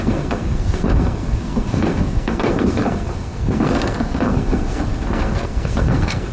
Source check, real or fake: fake